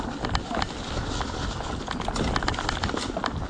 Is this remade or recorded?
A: recorded